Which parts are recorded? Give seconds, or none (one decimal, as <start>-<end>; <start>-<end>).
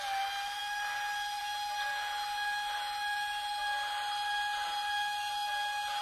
0.0-6.0